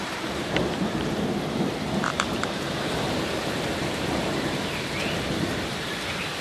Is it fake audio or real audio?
fake